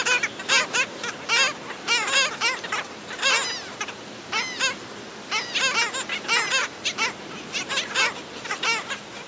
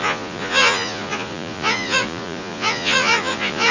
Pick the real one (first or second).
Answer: first